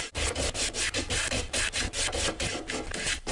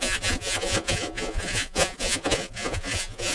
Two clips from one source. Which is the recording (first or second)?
first